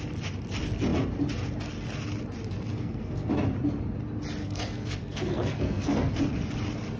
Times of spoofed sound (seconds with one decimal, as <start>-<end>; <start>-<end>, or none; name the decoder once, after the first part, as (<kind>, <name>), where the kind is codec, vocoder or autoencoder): 2.7-3.3 (codec, SNAC); 4.4-6.1